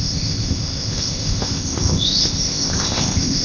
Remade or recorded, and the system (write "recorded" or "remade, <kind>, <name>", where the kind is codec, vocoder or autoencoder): remade, codec, ZipCodec